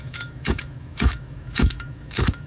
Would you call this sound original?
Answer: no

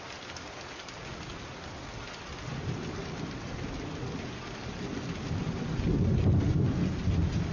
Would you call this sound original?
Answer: yes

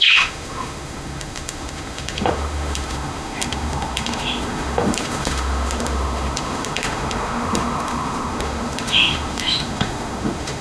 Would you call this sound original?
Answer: no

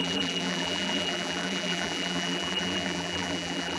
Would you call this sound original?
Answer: no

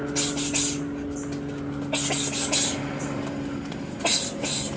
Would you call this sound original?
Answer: yes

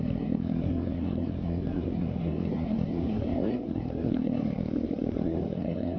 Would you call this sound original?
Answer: no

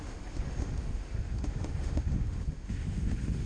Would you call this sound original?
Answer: no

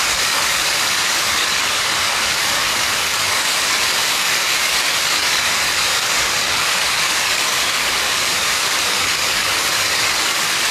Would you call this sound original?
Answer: no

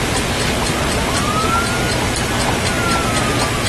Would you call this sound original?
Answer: yes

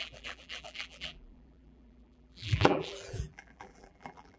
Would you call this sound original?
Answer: no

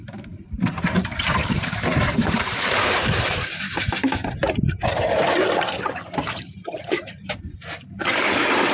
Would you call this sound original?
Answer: no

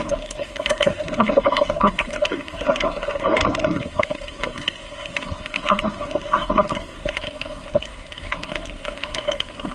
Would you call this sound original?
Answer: no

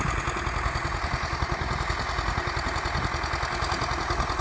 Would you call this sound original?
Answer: yes